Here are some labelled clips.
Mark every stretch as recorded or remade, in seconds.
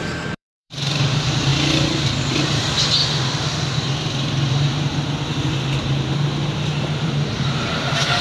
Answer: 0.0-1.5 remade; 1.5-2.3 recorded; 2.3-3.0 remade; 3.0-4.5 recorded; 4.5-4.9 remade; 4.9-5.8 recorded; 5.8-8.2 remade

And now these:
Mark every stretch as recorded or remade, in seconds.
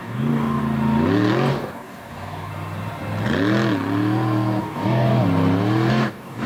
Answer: 0.0-0.6 remade; 0.6-1.5 recorded; 1.5-2.5 remade; 2.5-4.6 recorded; 4.6-5.2 remade; 5.2-5.9 recorded; 5.9-6.5 remade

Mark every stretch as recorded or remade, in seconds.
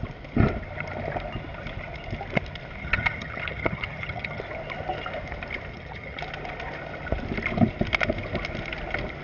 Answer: 0.0-2.8 recorded; 2.8-4.4 remade; 4.4-5.7 recorded; 5.7-6.2 remade; 6.2-9.2 recorded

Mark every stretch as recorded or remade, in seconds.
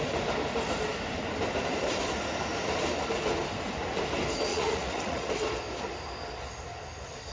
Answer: 0.0-4.5 recorded; 4.5-5.3 remade; 5.3-7.3 recorded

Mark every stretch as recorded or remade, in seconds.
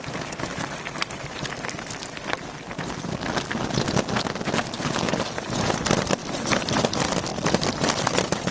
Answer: 0.0-0.5 recorded; 0.5-1.8 remade; 1.8-6.2 recorded; 6.2-6.8 remade; 6.8-7.3 recorded; 7.3-7.9 remade; 7.9-8.5 recorded